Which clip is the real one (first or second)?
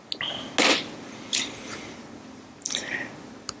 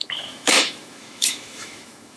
first